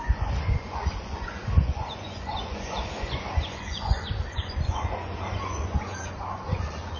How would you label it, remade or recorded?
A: remade